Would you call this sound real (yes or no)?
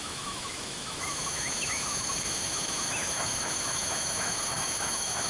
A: no